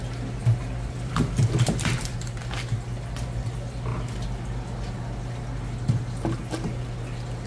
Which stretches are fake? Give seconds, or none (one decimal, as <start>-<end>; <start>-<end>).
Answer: 0.4-2.5